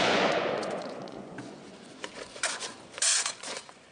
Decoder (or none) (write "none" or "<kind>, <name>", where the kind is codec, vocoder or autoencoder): vocoder, Vocos